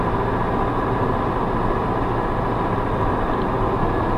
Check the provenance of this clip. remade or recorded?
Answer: recorded